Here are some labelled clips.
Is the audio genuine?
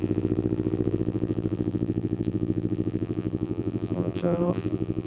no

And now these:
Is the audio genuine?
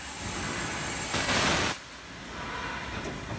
yes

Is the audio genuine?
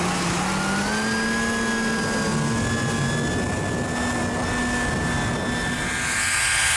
yes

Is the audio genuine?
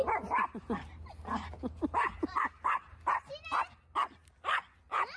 yes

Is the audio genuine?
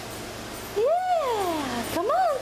yes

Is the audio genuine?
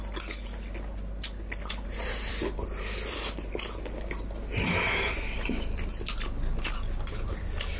yes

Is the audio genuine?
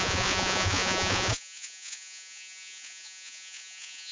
no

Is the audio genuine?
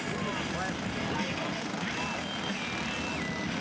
yes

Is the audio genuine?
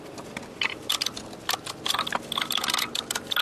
yes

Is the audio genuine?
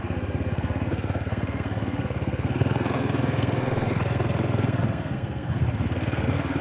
no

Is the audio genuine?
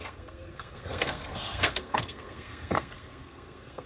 no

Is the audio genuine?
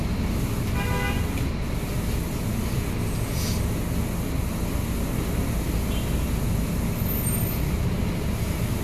yes